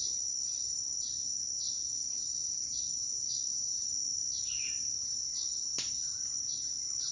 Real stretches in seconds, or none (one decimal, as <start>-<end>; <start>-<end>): 0.0-7.1